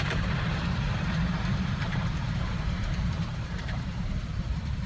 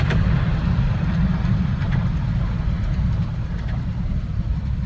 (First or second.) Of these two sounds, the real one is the second